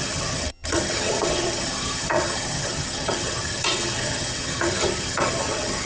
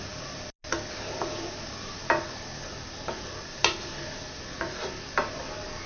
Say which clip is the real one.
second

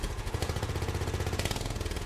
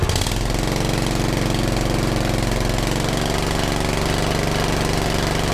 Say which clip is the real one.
second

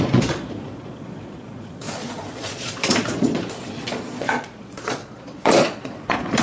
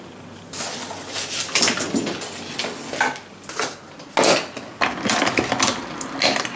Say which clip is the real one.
second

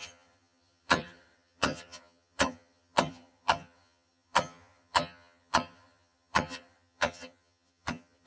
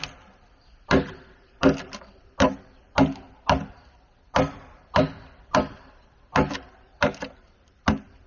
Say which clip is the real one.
second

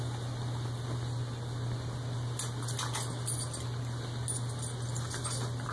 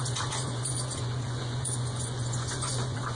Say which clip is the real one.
first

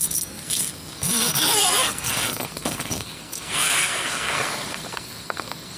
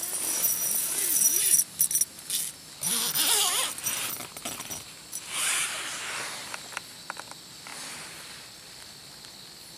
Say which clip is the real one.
second